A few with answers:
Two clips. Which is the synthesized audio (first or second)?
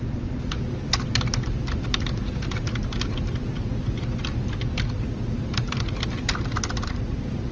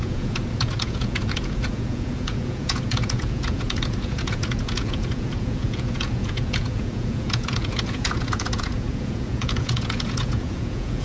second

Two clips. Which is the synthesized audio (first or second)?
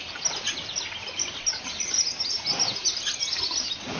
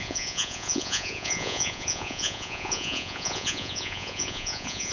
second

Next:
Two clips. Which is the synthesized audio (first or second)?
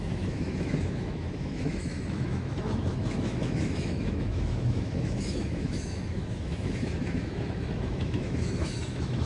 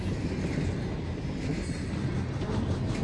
first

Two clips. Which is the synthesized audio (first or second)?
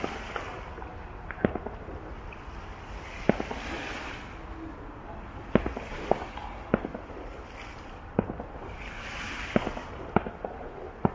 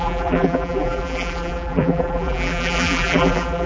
second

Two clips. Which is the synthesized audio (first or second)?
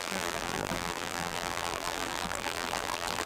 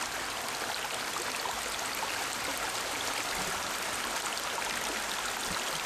first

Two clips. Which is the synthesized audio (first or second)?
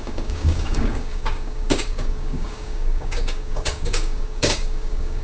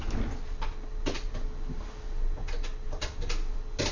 first